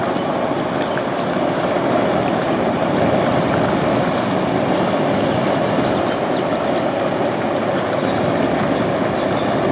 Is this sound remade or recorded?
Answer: recorded